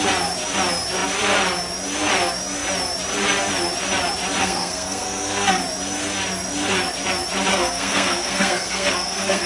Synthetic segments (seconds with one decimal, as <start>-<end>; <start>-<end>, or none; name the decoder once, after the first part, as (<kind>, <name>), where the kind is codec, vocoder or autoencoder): 4.4-5.6 (codec, SNAC); 7.5-9.5